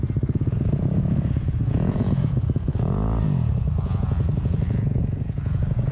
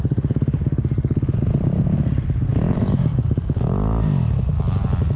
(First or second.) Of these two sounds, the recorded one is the second